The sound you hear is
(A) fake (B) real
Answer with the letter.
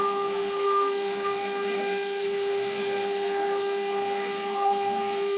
A